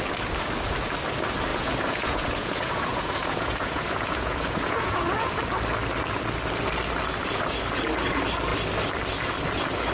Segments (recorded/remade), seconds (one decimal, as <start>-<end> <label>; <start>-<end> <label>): 0.0-1.5 recorded; 1.5-5.4 remade; 5.4-9.9 recorded